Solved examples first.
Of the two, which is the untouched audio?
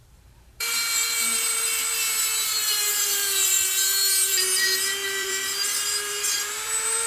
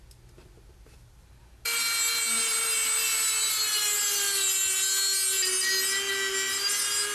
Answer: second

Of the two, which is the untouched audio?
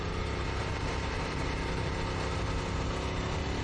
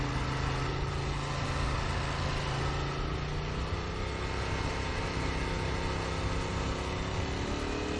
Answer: second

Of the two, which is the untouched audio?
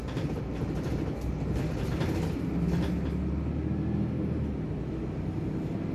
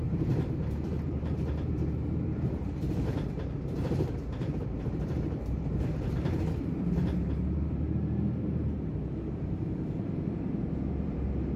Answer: first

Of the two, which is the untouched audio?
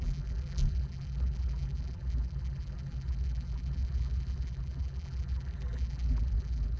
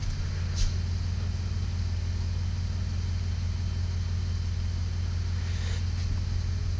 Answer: second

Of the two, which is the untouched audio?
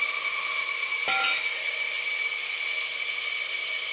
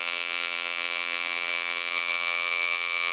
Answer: first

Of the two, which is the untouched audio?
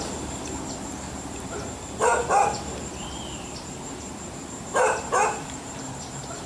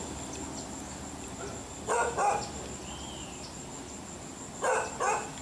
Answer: second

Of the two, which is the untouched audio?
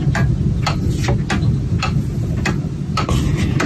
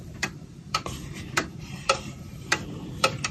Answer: first